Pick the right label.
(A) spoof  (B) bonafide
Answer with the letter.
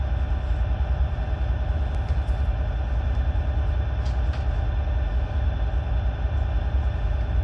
B